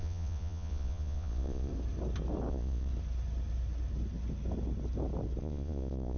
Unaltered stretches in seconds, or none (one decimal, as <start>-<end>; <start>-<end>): 1.7-2.5; 2.9-5.4